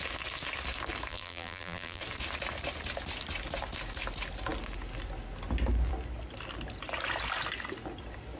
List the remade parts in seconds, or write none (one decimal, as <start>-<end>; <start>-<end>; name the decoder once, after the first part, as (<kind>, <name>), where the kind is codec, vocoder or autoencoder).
1.1-2.0 (vocoder, BigVGAN v2)